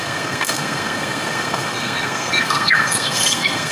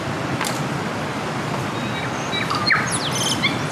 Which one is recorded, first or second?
second